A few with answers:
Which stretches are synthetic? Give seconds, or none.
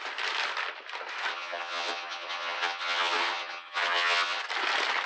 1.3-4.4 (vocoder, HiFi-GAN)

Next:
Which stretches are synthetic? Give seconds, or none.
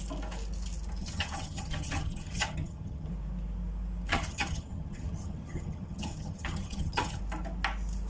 1.0-3.1 (vocoder, HiFi-GAN); 4.1-7.2